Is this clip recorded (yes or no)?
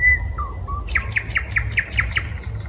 yes